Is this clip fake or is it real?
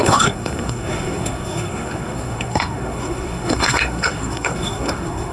fake